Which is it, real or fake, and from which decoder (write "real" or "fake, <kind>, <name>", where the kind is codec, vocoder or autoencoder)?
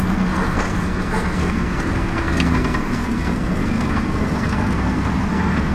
fake, codec, SNAC